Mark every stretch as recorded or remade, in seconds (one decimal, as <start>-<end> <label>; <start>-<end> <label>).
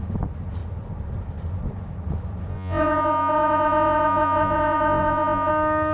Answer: 0.0-2.5 recorded; 2.5-5.5 remade; 5.5-5.9 recorded